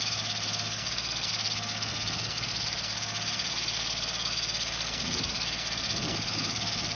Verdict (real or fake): fake